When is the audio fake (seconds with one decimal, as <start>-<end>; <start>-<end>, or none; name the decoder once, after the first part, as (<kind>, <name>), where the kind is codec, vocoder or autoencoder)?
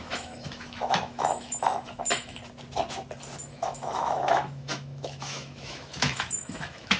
0.0-2.4 (autoencoder, DAC-VAE); 3.5-7.0